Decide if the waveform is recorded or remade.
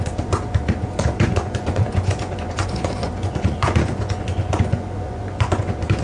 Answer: remade